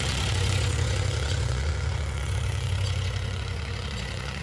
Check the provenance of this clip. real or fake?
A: fake